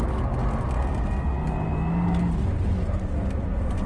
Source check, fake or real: real